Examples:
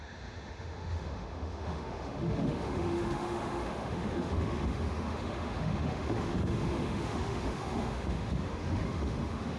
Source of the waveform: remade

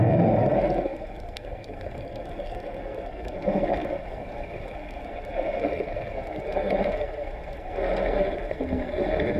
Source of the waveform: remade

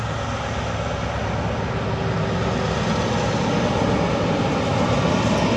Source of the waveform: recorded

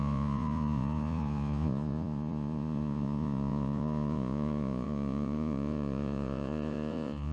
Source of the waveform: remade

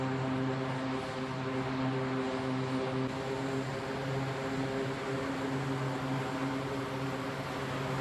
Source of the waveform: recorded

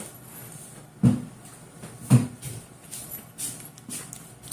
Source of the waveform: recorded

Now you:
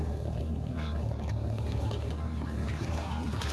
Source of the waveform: remade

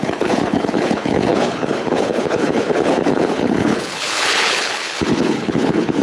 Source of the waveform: remade